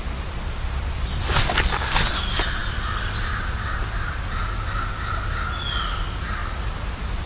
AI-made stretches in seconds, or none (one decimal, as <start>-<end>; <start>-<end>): none